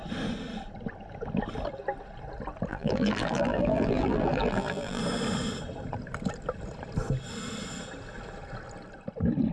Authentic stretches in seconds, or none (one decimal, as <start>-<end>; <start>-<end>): 0.0-2.7; 5.0-9.5